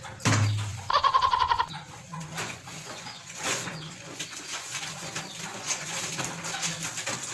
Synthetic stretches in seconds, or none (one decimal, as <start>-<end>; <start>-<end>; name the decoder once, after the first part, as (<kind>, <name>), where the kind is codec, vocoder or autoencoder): 0.7-5.1 (vocoder, Vocos); 5.5-6.0